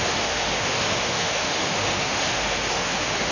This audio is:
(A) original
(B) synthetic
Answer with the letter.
B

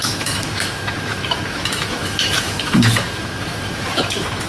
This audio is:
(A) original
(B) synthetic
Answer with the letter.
B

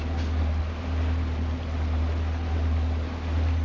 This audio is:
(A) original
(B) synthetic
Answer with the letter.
A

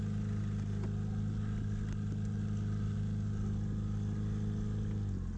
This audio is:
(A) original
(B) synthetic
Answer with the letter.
A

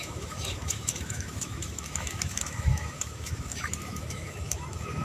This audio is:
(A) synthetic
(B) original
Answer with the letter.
A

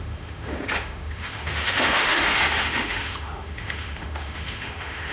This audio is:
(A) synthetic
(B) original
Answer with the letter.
A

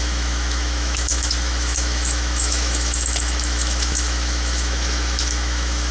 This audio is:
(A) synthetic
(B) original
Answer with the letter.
A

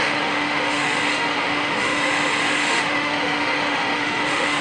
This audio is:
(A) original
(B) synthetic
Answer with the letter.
B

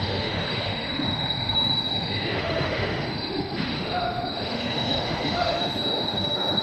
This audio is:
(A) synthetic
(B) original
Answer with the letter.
A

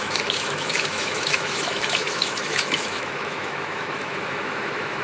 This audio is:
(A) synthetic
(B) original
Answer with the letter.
A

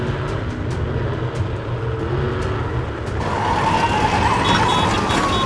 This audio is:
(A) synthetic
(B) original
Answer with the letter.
B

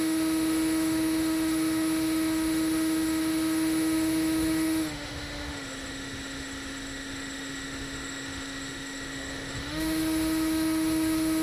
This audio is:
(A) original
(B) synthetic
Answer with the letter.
B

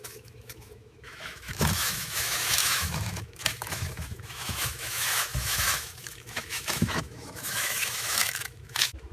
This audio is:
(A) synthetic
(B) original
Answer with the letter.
A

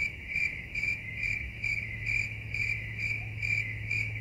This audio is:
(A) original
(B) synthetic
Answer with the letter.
B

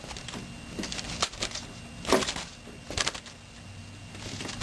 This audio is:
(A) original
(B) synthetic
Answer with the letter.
A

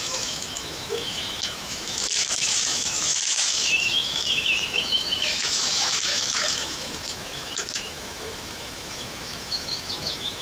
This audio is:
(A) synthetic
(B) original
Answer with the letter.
A